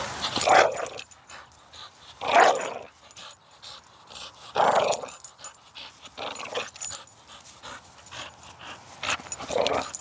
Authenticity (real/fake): real